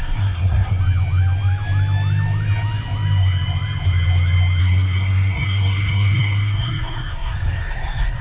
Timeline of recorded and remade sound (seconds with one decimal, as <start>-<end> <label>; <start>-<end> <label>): 0.0-0.8 remade; 0.8-4.6 recorded; 4.6-8.2 remade